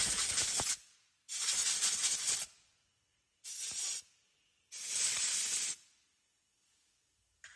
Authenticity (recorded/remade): recorded